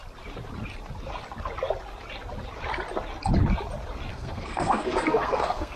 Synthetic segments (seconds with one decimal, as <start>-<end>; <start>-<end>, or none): 4.1-5.8